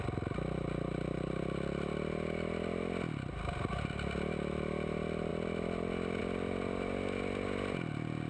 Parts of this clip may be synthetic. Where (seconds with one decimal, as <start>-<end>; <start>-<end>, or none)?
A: 5.3-6.2